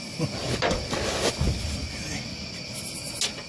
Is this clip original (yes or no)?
yes